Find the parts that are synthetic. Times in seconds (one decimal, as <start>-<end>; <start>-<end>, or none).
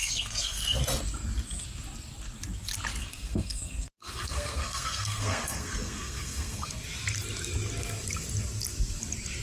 0.0-0.8; 3.0-6.7